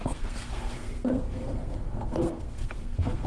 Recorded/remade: remade